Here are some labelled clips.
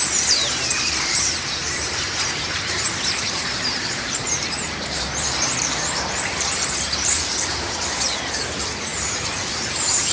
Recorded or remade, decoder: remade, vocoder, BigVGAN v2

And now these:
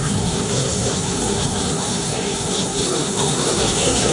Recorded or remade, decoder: remade, codec, SNAC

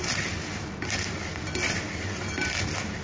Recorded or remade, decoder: recorded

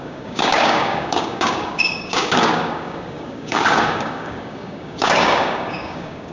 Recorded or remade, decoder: remade, codec, DAC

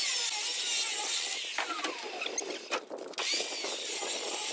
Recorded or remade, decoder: recorded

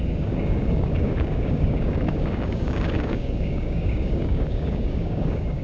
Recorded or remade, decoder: remade, codec, DAC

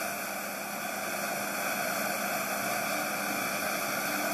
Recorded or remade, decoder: recorded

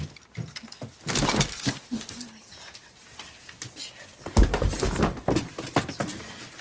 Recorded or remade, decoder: recorded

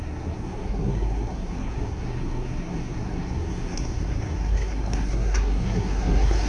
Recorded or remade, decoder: remade, codec, SNAC